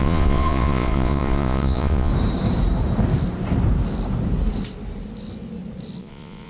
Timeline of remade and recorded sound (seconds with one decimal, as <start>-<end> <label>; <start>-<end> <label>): 0.0-2.1 remade; 2.1-6.0 recorded; 6.0-6.5 remade